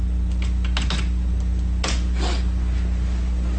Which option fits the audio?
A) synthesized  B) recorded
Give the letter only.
B